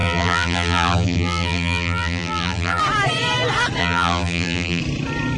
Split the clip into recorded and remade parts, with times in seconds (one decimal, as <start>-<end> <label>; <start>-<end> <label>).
0.0-2.8 remade; 2.8-3.8 recorded; 3.8-4.8 remade; 4.8-5.4 recorded